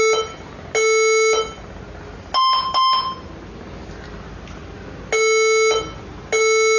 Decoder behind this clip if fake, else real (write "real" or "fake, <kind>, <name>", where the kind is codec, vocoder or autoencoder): real